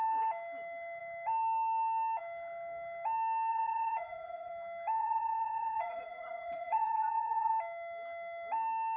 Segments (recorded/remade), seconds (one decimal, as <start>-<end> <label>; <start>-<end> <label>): 0.0-3.5 recorded; 3.5-4.5 remade; 4.5-5.0 recorded; 5.0-7.5 remade; 7.5-9.0 recorded